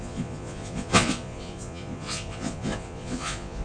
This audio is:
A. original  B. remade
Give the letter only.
B